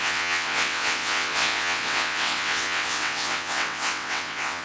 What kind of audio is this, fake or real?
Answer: fake